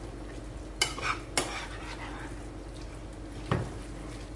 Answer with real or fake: real